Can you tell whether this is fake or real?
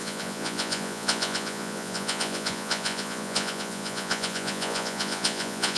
fake